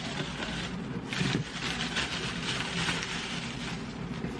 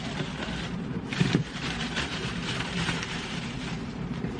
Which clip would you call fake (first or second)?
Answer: second